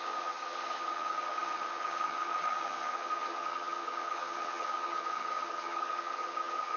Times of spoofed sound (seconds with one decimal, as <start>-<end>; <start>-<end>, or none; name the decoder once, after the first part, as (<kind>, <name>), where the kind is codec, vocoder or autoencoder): 0.0-6.8 (vocoder, HiFi-GAN)